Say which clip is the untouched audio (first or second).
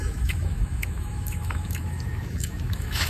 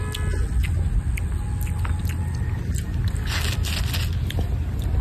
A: second